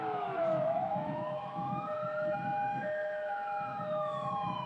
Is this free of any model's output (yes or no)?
no